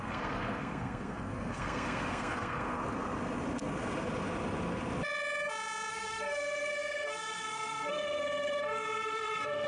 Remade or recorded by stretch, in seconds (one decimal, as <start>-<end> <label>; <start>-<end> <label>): 0.0-2.8 remade; 2.8-5.9 recorded; 5.9-9.7 remade